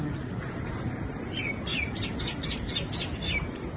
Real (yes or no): yes